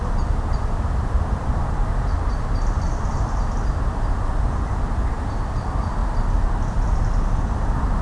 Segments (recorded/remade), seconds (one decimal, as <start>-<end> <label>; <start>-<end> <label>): 0.0-8.0 recorded